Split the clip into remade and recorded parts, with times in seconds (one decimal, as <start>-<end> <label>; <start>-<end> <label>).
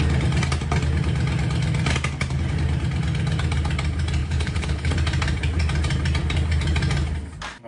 0.0-4.2 recorded; 4.2-4.9 remade; 4.9-7.7 recorded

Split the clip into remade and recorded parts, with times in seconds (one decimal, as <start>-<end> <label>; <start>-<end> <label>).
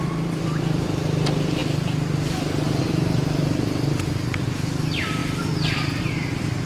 0.0-1.6 remade; 1.6-2.8 recorded; 2.8-6.7 remade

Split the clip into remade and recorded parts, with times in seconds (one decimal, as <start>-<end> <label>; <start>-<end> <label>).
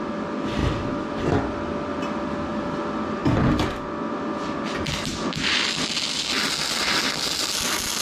0.0-3.2 remade; 3.2-4.1 recorded; 4.1-5.1 remade; 5.1-8.0 recorded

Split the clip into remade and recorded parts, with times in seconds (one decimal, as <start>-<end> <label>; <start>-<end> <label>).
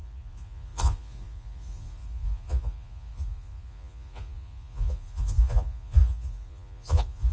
0.0-7.3 remade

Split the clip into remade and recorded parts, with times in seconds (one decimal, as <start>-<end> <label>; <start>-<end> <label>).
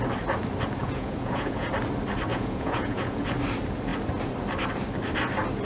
0.0-0.8 recorded; 0.8-1.7 remade; 1.7-2.3 recorded; 2.3-3.3 remade; 3.3-5.6 recorded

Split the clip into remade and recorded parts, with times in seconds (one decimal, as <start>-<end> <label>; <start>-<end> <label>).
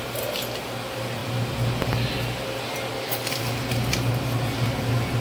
0.0-5.2 recorded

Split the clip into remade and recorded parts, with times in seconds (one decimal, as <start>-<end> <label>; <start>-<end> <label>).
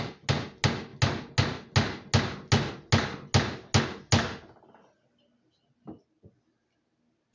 0.0-7.3 recorded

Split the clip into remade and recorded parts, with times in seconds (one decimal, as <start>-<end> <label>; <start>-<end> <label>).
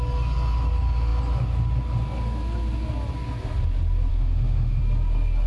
0.0-4.1 recorded; 4.1-4.8 remade; 4.8-5.5 recorded